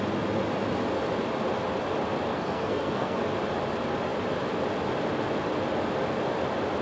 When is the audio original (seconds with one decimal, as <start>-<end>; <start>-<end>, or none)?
0.0-2.3; 3.2-6.8